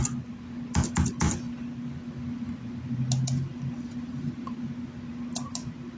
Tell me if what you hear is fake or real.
real